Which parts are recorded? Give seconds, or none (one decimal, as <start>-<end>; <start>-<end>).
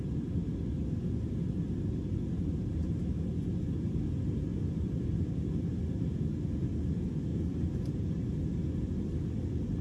0.0-7.3; 8.2-9.8